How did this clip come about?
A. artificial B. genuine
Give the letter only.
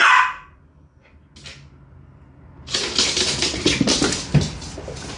B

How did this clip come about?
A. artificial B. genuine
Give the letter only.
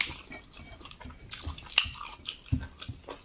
B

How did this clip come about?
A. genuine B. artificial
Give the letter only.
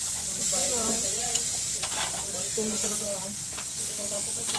B